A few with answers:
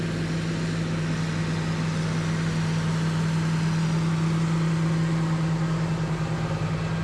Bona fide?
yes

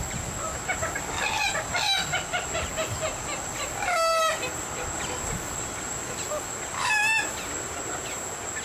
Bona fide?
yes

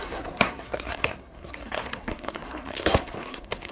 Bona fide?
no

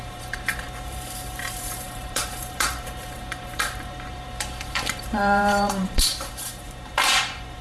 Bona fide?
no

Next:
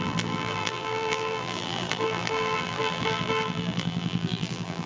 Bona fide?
no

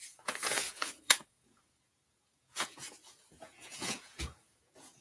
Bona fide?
no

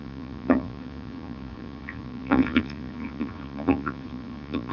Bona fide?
no